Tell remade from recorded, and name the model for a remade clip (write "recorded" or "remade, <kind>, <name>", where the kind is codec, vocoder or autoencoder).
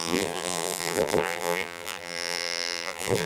remade, vocoder, BigVGAN v2